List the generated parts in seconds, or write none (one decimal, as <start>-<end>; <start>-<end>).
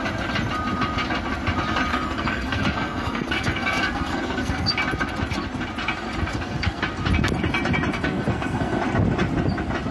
1.9-4.7; 6.3-6.8; 7.9-8.8